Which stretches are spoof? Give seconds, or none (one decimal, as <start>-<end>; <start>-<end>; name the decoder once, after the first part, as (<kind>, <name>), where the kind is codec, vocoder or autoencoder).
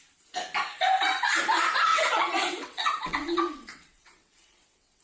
1.9-5.0 (vocoder, WaveNeXt)